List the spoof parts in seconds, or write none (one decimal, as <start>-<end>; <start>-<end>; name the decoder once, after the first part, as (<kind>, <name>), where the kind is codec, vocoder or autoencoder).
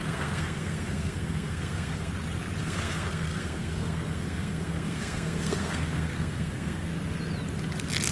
0.0-2.1 (codec, SNAC); 2.6-6.9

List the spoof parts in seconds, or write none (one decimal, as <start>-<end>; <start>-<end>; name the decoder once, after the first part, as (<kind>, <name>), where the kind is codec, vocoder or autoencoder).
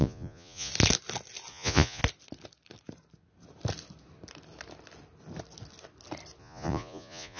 0.0-0.7 (vocoder, Vocos); 1.5-2.0; 6.4-7.4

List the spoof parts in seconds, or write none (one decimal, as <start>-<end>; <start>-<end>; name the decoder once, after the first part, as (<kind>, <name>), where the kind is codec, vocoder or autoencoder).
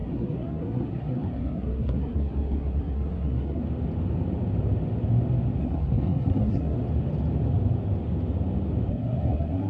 0.0-3.6 (codec, SNAC); 5.6-6.8; 8.9-9.7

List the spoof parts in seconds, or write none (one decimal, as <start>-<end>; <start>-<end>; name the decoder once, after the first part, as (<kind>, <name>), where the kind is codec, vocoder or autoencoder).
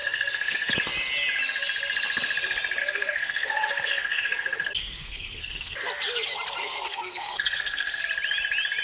0.0-0.7 (codec, SNAC); 2.8-5.9; 6.6-8.0